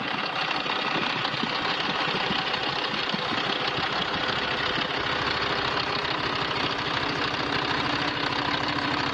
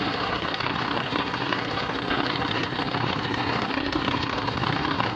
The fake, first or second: second